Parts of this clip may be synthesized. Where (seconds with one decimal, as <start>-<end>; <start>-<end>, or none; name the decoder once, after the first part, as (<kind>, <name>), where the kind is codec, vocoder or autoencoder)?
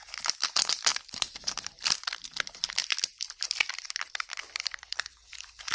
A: 0.0-2.8 (vocoder, BigVGAN v2); 4.5-5.7